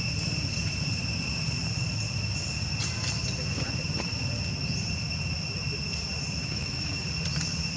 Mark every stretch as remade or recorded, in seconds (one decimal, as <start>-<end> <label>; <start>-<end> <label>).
0.0-6.4 recorded; 6.4-7.1 remade; 7.1-7.8 recorded